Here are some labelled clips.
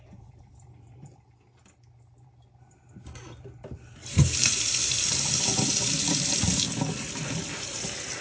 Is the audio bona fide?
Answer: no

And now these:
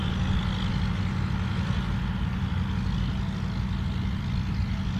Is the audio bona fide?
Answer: yes